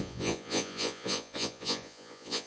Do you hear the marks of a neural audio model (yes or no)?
yes